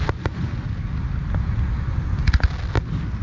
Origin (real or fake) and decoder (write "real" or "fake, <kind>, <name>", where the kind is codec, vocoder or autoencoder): real